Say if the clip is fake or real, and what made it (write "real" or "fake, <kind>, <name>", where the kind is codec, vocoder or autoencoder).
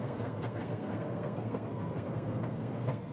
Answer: fake, codec, SNAC